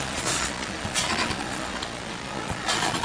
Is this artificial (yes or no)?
yes